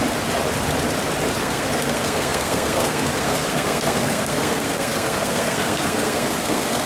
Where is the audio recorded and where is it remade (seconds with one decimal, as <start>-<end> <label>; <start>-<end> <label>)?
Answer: 0.0-1.4 recorded; 1.4-6.9 remade